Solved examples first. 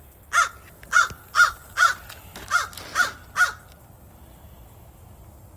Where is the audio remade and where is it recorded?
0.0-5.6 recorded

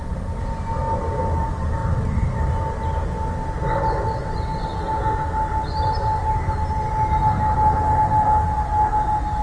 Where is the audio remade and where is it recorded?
0.0-9.4 recorded

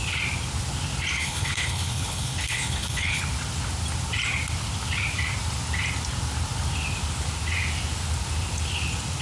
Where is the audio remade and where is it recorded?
0.0-1.2 recorded; 1.2-3.2 remade; 3.2-9.2 recorded